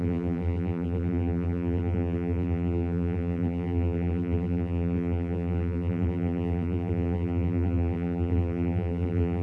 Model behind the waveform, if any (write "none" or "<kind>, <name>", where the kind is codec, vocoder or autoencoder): vocoder, BigVGAN v2